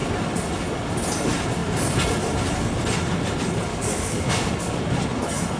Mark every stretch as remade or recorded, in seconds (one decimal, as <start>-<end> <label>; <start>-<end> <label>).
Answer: 0.0-3.7 recorded; 3.7-4.8 remade; 4.8-5.6 recorded